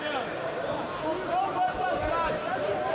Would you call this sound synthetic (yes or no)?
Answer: no